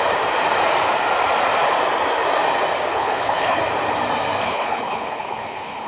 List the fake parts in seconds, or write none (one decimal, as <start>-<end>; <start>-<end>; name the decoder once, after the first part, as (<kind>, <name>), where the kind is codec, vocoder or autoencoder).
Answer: 2.9-3.6 (codec, HILCodec); 4.4-5.9